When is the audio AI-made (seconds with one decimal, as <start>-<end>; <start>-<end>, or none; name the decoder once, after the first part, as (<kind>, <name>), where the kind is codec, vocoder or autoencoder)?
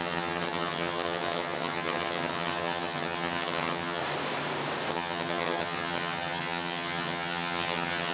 0.0-4.0 (vocoder, HiFi-GAN); 4.9-8.1